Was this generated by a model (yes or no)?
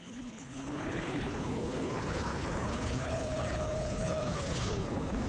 yes